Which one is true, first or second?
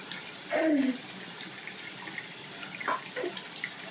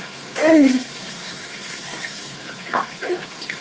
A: first